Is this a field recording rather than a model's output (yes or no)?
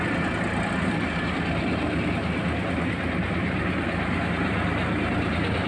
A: yes